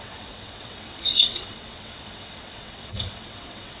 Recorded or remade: remade